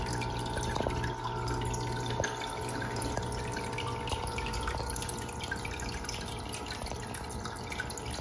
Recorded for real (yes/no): yes